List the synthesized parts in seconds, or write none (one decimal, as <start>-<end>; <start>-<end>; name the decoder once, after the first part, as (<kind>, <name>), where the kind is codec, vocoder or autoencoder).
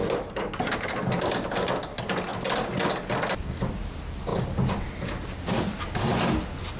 none